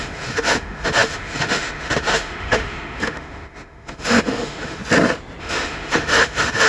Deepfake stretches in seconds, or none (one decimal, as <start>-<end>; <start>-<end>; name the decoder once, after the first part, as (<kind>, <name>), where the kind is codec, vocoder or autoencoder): 0.0-4.8 (autoencoder, DAC-VAE); 5.4-6.7